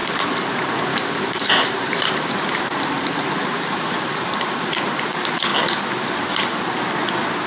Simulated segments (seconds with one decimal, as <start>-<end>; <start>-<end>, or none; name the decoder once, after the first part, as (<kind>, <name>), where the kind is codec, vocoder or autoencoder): 0.0-5.5 (vocoder, BigVGAN v2)